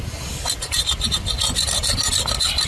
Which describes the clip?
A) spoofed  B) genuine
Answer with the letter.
B